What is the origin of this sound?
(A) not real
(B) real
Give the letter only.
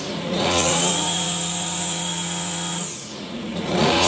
A